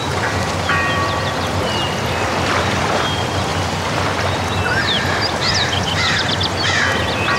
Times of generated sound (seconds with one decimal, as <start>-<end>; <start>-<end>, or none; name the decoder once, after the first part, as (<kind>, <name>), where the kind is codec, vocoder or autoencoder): 0.0-3.5 (vocoder, BigVGAN v2); 4.7-7.4